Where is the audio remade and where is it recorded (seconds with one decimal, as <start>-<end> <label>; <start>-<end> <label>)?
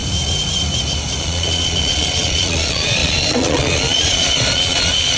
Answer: 0.0-1.2 recorded; 1.2-5.2 remade